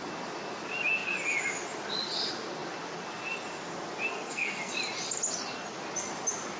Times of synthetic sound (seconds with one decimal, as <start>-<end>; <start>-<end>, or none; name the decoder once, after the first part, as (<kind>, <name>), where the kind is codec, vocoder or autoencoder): 4.1-4.7 (codec, SNAC)